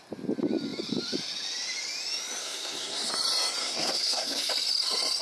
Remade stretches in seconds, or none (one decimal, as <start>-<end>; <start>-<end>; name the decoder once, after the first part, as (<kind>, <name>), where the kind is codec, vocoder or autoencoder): 2.4-3.1 (codec, SNAC); 3.6-4.5